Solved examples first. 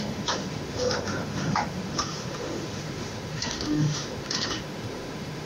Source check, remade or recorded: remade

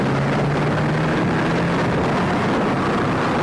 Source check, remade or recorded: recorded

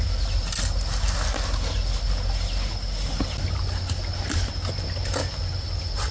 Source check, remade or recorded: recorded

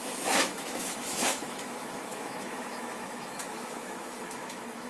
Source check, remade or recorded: remade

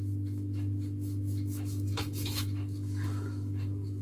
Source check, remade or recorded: remade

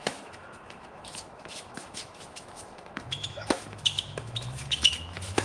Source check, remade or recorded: remade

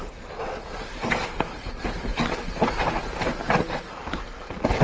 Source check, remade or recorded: recorded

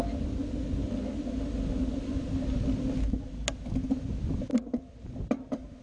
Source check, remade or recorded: recorded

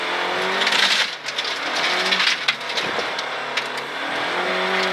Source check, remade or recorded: recorded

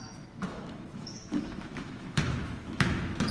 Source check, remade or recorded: remade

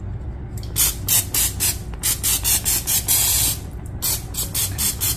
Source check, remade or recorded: recorded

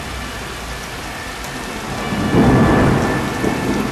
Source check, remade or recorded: recorded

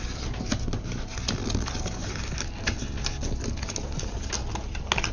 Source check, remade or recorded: recorded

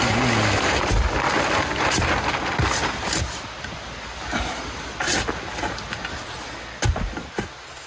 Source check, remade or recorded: recorded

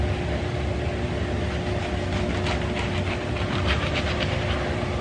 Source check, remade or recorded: recorded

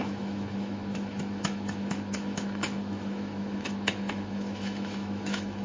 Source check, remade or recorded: remade